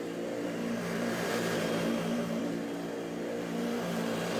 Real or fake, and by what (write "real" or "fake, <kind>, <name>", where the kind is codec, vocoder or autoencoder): fake, vocoder, BigVGAN v2